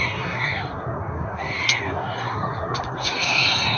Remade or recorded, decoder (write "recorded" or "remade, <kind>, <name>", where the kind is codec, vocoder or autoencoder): remade, codec, SNAC